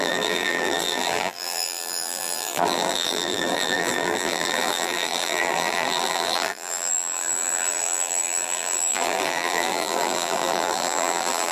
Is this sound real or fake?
fake